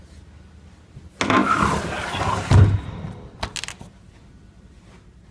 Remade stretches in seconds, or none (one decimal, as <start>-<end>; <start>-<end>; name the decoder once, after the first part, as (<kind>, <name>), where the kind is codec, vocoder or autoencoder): none